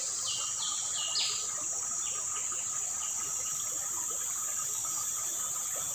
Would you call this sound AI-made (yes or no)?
no